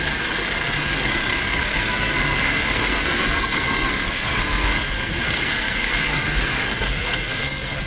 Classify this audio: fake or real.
fake